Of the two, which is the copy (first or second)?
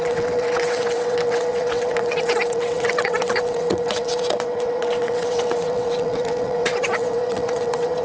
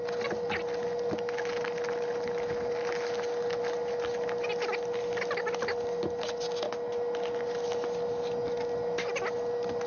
first